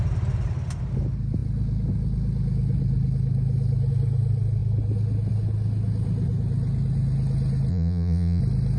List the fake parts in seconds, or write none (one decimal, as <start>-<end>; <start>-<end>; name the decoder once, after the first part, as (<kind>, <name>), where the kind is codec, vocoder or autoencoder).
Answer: 7.7-8.4 (vocoder, Vocos)